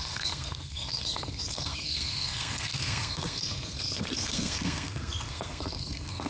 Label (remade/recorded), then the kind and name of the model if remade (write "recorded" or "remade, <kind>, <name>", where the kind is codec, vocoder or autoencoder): remade, codec, SNAC